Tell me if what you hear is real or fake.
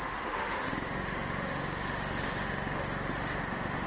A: fake